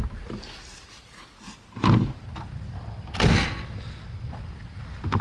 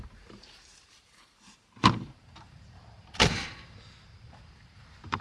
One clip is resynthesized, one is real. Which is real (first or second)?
first